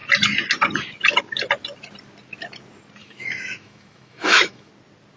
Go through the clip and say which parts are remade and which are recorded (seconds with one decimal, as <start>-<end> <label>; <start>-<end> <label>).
0.0-3.0 recorded; 3.0-4.7 remade; 4.7-5.2 recorded